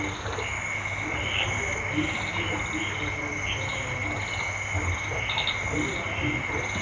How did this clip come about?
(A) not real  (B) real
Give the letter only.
B